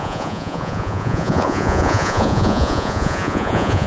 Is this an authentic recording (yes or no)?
no